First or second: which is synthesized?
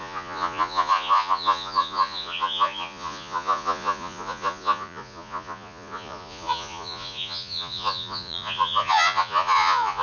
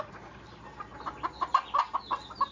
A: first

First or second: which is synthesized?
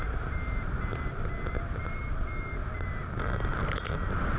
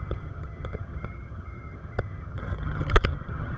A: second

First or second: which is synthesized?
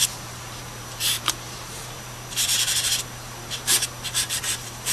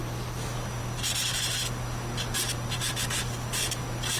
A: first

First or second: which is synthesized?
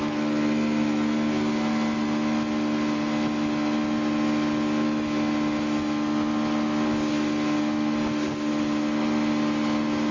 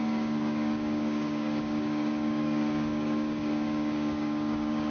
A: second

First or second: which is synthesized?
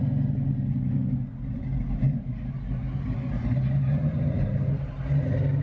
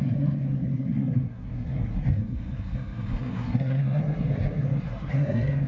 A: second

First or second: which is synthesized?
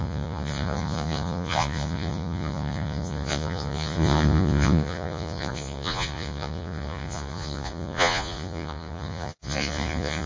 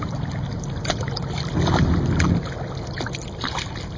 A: first